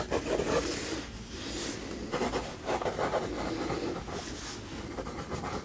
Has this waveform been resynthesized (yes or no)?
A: no